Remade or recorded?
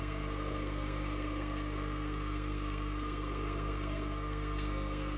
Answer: remade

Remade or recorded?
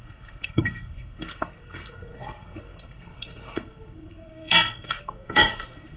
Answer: remade